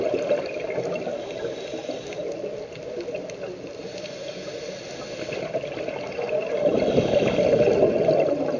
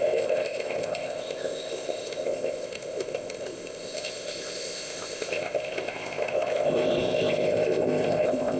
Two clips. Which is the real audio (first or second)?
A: first